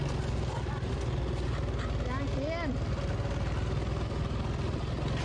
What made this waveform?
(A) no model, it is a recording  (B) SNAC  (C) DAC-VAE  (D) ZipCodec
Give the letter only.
A